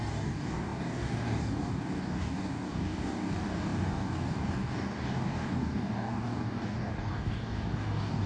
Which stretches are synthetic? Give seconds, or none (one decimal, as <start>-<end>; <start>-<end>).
0.0-8.3